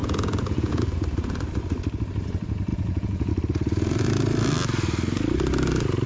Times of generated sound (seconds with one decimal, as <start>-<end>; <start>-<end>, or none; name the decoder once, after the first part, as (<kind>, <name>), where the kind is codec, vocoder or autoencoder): 0.0-0.8 (vocoder, Vocos); 2.7-3.3

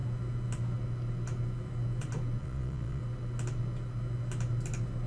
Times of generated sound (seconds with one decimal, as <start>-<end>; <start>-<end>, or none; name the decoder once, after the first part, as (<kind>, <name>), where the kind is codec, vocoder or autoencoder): 2.4-3.0 (vocoder, Vocos)

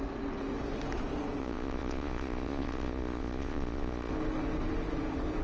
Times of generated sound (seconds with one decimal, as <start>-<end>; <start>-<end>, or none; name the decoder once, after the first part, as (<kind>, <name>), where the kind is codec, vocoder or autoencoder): 1.4-4.1 (vocoder, Vocos)

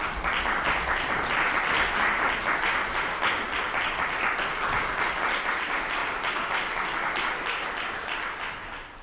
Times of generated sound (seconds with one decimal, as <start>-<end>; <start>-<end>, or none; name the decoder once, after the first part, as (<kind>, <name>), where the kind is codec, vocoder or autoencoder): none

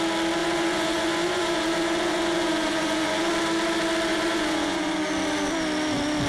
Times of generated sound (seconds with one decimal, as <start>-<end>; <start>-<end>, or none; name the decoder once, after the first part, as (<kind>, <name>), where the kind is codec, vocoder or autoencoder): 0.4-3.3 (vocoder, Vocos); 4.1-4.9

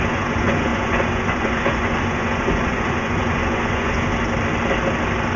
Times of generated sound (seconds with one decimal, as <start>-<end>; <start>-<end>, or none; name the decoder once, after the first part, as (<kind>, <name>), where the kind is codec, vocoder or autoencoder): 0.0-4.1 (vocoder, Vocos)